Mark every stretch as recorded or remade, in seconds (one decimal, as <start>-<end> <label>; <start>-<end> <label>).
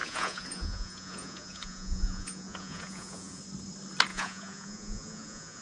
0.0-3.4 remade; 3.4-4.1 recorded; 4.1-5.6 remade